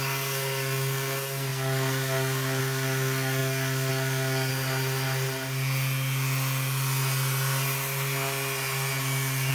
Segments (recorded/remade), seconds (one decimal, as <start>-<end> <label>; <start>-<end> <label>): 0.0-4.5 remade; 4.5-9.5 recorded

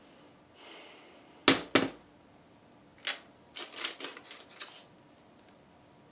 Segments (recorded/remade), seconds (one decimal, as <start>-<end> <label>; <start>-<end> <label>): 0.0-6.1 recorded

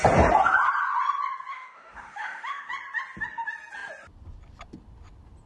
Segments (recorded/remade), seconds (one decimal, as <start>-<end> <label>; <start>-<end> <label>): 0.0-1.5 recorded; 1.5-2.7 remade; 2.7-5.5 recorded

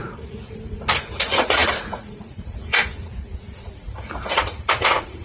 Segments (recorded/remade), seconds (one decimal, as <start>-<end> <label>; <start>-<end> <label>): 0.0-5.2 remade

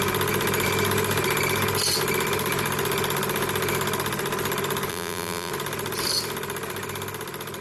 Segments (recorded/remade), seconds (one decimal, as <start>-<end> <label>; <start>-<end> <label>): 0.0-4.9 recorded; 4.9-5.5 remade; 5.5-7.6 recorded